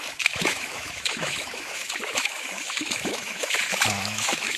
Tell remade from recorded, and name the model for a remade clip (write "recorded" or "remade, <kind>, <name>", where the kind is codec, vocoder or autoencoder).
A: remade, autoencoder, DAC-VAE